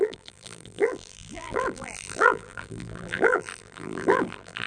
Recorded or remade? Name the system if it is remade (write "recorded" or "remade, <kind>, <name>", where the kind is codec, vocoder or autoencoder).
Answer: remade, vocoder, BigVGAN v2